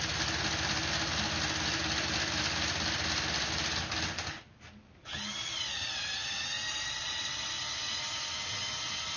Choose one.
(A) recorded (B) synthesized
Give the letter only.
A